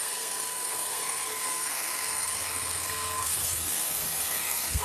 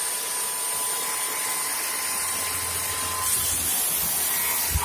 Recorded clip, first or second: second